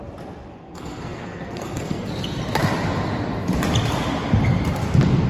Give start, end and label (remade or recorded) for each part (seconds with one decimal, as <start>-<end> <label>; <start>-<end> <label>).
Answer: 0.0-0.5 recorded; 0.5-2.1 remade; 2.1-5.3 recorded